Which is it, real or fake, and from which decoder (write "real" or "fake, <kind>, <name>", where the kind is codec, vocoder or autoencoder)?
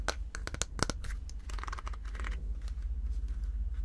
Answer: real